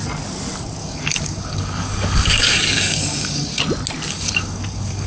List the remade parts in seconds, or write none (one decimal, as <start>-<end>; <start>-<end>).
0.8-3.6; 4.1-5.1